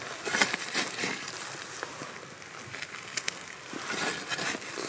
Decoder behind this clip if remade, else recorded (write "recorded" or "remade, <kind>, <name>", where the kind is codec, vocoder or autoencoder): recorded